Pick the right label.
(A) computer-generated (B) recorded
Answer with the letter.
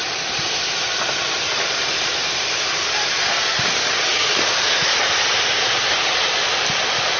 B